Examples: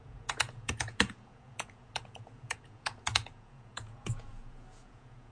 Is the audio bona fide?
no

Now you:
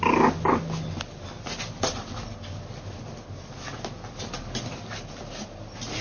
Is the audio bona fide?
yes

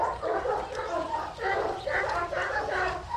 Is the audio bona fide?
yes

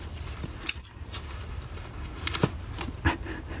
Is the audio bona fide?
yes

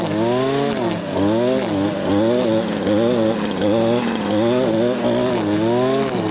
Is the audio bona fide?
yes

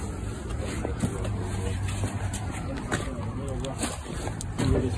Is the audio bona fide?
yes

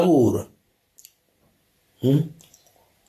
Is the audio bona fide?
yes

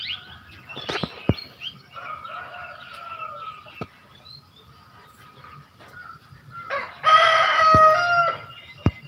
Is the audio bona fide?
yes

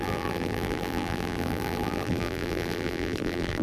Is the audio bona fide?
no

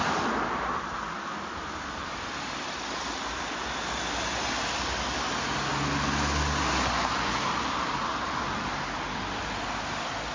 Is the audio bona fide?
yes